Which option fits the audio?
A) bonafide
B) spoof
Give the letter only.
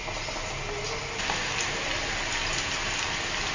A